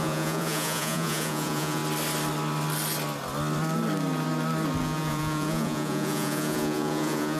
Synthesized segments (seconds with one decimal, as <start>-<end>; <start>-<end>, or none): 0.0-1.8; 4.8-7.4